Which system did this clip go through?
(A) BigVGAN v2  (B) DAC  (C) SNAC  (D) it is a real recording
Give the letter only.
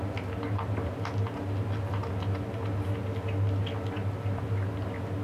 D